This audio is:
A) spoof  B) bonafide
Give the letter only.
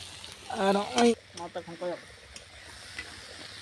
B